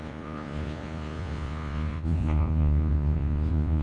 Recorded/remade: remade